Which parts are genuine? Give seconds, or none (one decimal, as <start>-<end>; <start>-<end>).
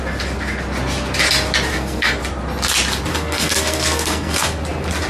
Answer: 0.0-1.7; 2.2-3.1; 4.6-5.1